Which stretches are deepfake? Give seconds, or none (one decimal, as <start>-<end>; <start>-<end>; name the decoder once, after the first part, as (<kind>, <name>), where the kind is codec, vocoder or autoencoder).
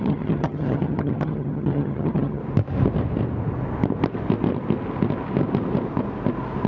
0.0-2.4 (vocoder, HiFi-GAN)